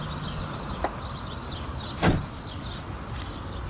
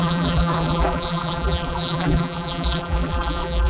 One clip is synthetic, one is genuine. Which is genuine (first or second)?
first